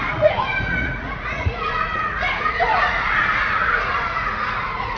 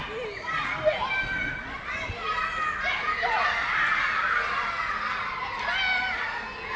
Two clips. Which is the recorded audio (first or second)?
second